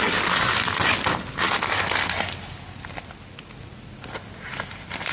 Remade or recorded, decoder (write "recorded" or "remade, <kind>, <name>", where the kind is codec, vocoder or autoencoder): recorded